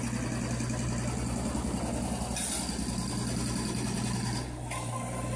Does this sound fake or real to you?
real